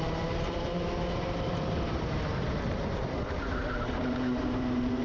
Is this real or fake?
fake